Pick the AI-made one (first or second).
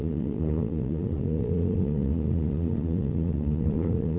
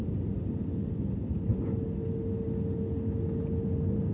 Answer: first